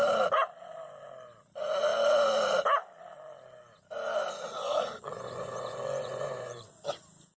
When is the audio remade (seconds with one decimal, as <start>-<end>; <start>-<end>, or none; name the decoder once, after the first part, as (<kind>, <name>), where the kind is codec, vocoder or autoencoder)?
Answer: 4.5-6.8 (vocoder, Vocos)